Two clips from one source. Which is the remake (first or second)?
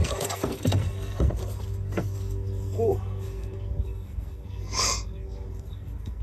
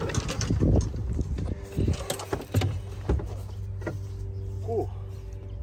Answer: first